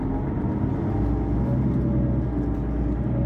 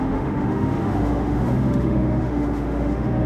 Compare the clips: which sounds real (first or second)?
first